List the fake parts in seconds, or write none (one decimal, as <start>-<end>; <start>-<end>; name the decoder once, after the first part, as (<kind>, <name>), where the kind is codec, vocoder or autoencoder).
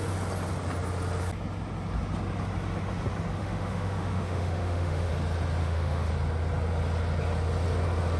3.4-5.1 (autoencoder, DAC-VAE); 5.6-6.1